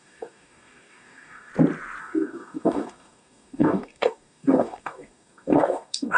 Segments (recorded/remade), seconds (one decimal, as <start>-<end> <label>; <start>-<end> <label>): 0.0-1.5 remade; 1.5-2.0 recorded; 2.0-6.2 remade